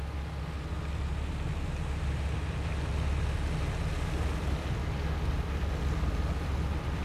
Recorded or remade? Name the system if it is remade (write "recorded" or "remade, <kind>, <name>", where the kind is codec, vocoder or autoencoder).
recorded